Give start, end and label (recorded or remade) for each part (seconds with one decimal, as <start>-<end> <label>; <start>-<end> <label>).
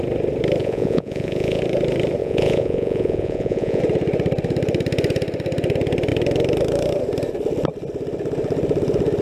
0.0-0.6 recorded; 0.6-1.6 remade; 1.6-2.2 recorded; 2.2-3.8 remade; 3.8-9.2 recorded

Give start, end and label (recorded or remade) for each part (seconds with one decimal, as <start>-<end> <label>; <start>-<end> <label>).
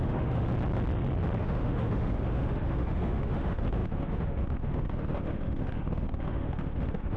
0.0-0.5 remade; 0.5-1.4 recorded; 1.4-7.2 remade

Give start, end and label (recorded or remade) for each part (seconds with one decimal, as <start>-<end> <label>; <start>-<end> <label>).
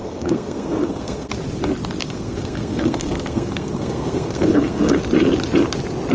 0.0-1.3 remade; 1.3-2.0 recorded; 2.0-5.0 remade; 5.0-6.1 recorded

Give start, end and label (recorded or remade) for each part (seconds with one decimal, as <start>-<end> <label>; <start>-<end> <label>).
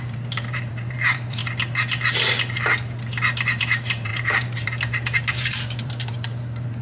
0.0-1.4 remade; 1.4-3.6 recorded; 3.6-6.8 remade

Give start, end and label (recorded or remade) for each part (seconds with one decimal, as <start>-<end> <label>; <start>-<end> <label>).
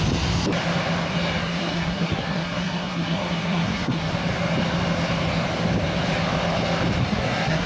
0.0-1.4 recorded; 1.4-4.1 remade; 4.1-7.0 recorded; 7.0-7.7 remade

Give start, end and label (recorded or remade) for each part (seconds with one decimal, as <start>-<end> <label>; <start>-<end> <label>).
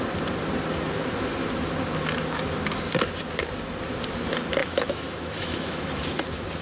0.0-4.6 recorded; 4.6-5.9 remade; 5.9-6.6 recorded